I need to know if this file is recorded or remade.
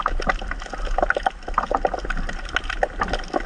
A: recorded